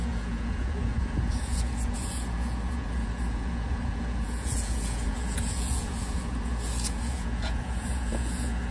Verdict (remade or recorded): remade